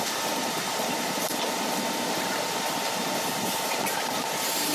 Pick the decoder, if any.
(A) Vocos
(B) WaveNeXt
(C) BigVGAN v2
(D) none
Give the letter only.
C